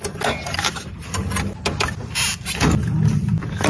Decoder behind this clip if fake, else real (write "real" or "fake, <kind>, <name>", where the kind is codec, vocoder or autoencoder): real